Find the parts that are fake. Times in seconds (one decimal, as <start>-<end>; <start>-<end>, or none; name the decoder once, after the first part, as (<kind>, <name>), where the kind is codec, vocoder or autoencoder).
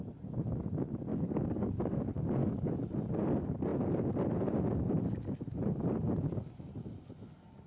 1.1-2.0 (codec, DAC); 2.4-2.9